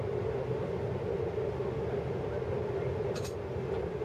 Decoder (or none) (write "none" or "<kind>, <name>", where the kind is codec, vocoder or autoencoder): none